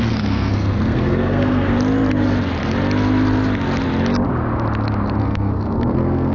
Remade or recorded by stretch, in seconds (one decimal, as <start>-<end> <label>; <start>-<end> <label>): 0.0-1.7 remade; 1.7-5.2 recorded; 5.2-6.3 remade

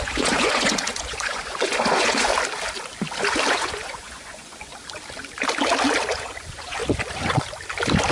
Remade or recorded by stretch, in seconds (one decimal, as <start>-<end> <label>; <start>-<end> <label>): 0.0-2.3 remade; 2.3-3.5 recorded; 3.5-4.7 remade; 4.7-6.1 recorded; 6.1-6.8 remade; 6.8-8.1 recorded